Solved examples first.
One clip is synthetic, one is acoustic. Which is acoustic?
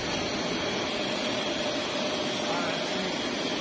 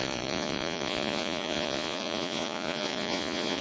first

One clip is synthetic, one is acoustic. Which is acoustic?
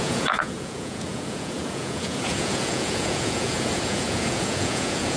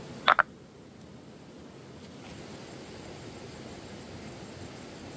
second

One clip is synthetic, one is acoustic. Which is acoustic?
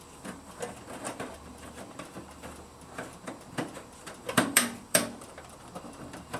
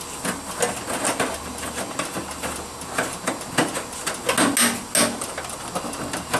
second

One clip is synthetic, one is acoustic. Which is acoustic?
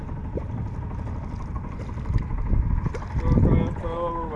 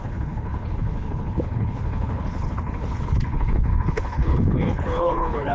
first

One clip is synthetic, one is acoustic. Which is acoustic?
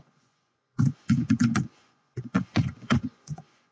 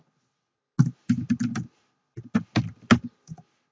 second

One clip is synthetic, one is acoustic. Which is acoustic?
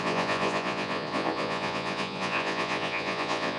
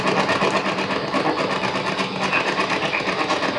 second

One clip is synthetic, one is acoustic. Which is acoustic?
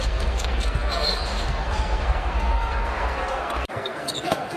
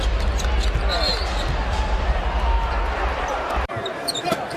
second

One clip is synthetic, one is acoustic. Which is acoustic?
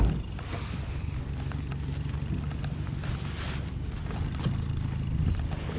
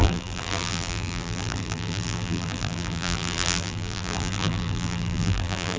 first